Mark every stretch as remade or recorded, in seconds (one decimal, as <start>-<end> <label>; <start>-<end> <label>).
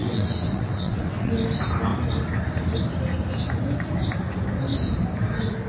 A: 0.0-1.3 remade; 1.3-5.7 recorded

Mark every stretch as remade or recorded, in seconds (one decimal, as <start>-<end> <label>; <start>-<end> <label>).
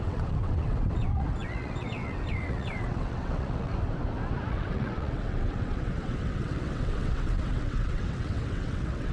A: 0.0-3.7 remade; 3.7-4.5 recorded; 4.5-9.1 remade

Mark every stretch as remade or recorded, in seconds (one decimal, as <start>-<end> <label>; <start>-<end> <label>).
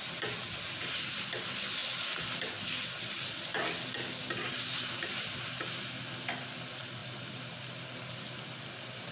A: 0.0-9.1 recorded